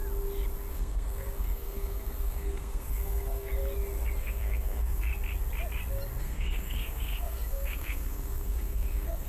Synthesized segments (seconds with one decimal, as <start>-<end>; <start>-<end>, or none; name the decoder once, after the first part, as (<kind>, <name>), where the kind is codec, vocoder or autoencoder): 0.7-3.5 (codec, SNAC); 4.2-5.1; 6.2-9.3